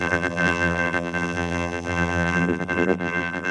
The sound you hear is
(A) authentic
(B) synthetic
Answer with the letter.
B